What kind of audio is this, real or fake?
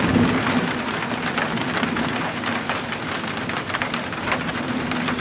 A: real